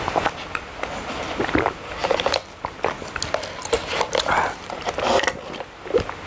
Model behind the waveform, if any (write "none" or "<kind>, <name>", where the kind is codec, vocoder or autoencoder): none